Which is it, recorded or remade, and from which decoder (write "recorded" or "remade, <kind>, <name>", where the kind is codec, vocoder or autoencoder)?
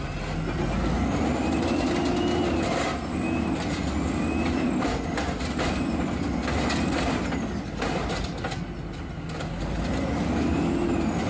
recorded